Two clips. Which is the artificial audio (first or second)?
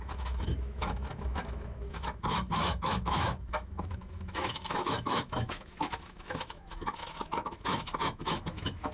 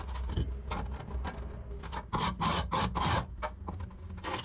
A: first